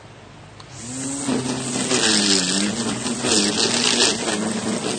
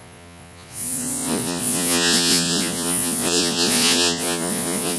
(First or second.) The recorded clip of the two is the first